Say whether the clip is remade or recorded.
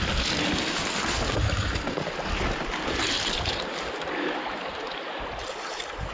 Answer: recorded